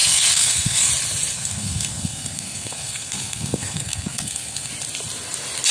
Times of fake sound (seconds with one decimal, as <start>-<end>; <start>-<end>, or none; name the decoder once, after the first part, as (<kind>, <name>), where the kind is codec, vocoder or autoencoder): 0.0-0.9 (codec, SNAC); 1.3-4.7